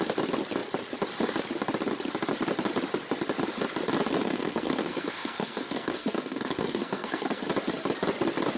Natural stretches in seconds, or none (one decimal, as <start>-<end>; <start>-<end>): 0.0-4.2; 7.4-8.6